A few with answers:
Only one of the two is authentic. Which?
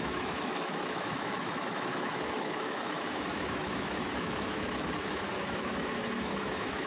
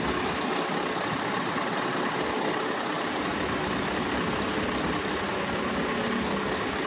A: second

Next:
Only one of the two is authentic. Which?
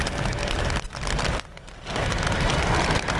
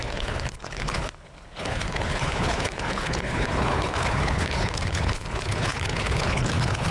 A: first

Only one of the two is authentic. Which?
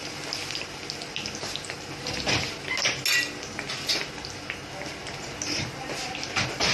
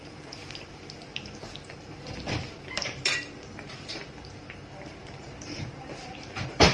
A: first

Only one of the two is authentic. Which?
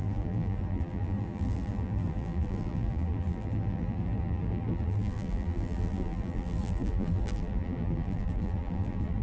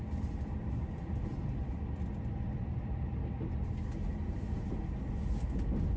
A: second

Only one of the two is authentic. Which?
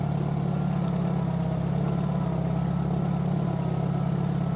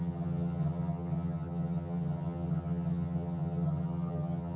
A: first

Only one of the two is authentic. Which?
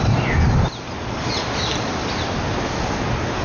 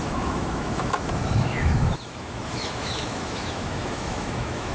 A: first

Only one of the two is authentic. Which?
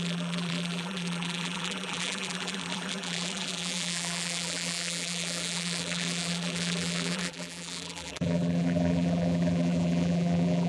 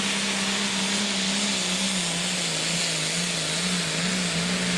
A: second